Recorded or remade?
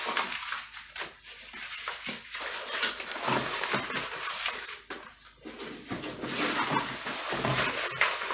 recorded